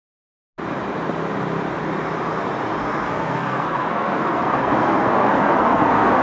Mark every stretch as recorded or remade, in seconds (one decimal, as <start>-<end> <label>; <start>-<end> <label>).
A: 0.0-2.8 recorded; 2.8-6.2 remade